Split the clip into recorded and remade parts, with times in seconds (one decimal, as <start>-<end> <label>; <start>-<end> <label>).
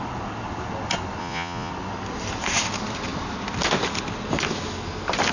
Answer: 0.0-1.2 recorded; 1.2-1.7 remade; 1.7-5.3 recorded